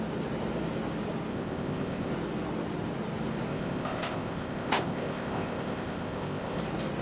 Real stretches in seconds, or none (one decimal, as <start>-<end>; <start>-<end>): 0.0-1.3; 2.1-3.5; 6.6-7.0